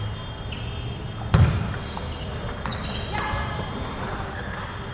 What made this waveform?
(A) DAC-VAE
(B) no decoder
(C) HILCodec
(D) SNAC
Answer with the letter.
B